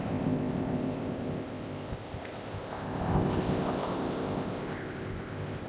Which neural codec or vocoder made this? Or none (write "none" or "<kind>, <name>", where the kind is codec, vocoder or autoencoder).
codec, ZipCodec